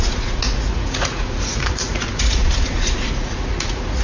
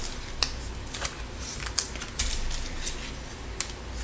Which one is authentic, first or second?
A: second